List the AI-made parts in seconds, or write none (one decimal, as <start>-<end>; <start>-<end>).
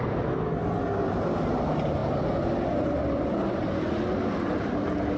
none